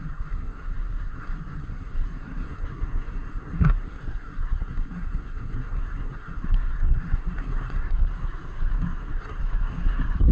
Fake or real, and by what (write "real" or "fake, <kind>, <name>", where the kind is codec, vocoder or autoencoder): fake, codec, SNAC